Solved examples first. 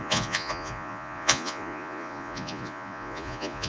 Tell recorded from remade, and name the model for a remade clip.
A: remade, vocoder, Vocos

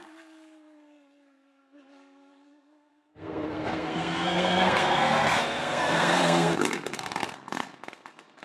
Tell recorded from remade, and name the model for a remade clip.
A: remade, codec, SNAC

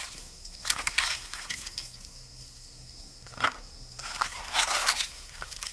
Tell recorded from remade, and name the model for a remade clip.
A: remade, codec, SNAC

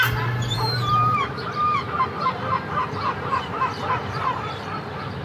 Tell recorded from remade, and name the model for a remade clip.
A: remade, vocoder, BigVGAN v2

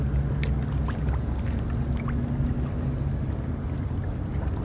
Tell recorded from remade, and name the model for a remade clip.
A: recorded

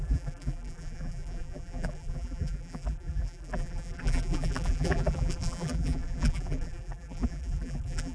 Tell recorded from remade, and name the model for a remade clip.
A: remade, vocoder, BigVGAN v2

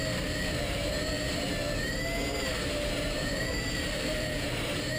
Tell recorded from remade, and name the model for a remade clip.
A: remade, vocoder, BigVGAN v2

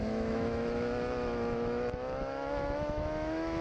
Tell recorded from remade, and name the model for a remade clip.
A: remade, autoencoder, DAC-VAE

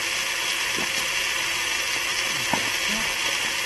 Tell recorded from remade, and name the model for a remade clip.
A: recorded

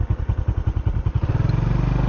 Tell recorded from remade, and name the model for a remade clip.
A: recorded